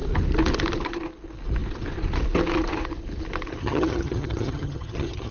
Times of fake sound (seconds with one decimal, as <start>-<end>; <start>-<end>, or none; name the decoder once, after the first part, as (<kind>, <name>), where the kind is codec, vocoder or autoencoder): 3.6-5.3 (vocoder, HiFi-GAN)